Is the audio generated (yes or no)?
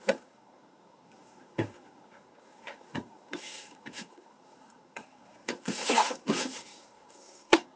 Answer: yes